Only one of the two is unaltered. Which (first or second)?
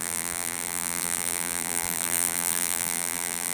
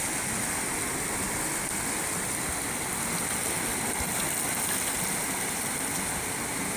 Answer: second